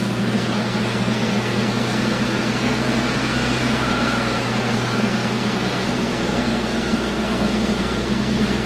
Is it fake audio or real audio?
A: fake